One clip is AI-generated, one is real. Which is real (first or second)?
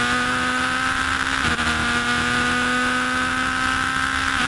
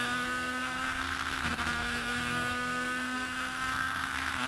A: first